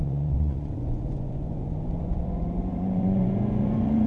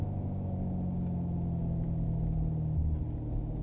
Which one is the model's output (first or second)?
first